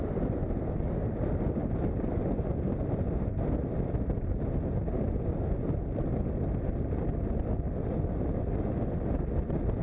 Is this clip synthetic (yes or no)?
no